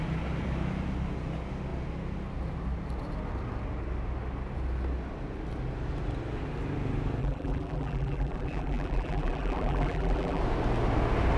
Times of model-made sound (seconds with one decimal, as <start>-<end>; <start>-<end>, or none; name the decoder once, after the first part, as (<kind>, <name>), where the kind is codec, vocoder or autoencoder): 7.2-10.4 (vocoder, BigVGAN v2)

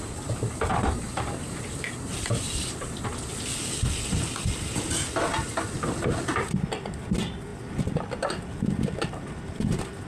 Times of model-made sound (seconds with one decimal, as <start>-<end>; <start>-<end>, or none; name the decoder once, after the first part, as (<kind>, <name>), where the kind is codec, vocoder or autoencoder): 0.7-2.9 (vocoder, BigVGAN v2)

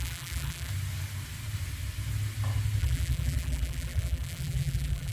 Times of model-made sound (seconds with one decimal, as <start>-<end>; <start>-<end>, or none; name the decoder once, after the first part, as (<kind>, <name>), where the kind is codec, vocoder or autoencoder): 0.0-0.7 (vocoder, BigVGAN v2); 2.8-5.1

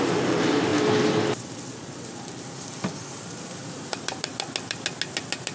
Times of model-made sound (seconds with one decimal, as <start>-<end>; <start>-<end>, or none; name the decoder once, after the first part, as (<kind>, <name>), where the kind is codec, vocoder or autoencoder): 0.0-0.7 (vocoder, BigVGAN v2); 3.3-4.3